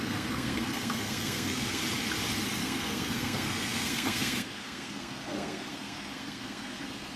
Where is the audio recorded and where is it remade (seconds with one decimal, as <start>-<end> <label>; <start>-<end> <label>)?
0.0-1.8 remade; 1.8-2.6 recorded; 2.6-7.2 remade